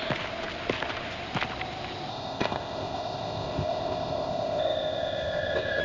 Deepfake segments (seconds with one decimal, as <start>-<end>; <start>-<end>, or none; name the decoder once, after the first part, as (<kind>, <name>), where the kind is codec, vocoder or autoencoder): 2.1-5.8 (codec, ZipCodec)